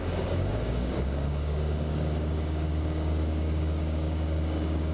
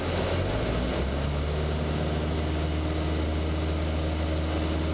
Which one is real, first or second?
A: second